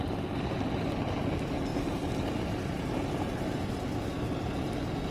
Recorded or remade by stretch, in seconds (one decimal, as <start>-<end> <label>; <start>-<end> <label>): 0.0-5.1 recorded